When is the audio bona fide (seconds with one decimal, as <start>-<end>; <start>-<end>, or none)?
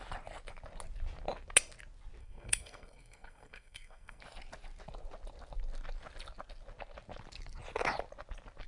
0.0-2.2; 4.2-8.7